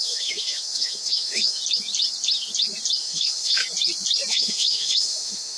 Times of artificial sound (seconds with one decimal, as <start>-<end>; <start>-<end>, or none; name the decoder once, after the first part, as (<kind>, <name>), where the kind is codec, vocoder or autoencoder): 0.0-1.6 (autoencoder, DAC-VAE); 3.0-3.6; 4.3-5.6